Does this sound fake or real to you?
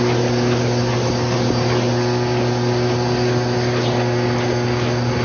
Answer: real